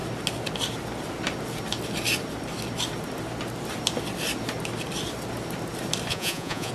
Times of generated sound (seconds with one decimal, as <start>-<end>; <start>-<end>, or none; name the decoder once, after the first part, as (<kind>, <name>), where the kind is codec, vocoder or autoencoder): 6.1-6.7 (vocoder, Vocos)